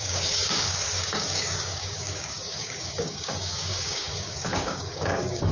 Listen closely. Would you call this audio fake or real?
fake